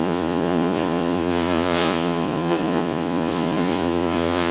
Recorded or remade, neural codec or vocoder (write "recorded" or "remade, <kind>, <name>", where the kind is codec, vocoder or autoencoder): remade, vocoder, Vocos